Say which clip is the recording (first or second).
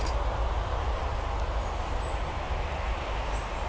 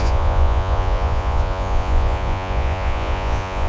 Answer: first